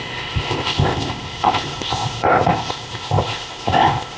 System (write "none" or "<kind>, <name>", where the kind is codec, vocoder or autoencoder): codec, ZipCodec